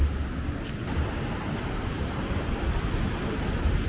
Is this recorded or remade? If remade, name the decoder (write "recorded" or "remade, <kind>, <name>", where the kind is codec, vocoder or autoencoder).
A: recorded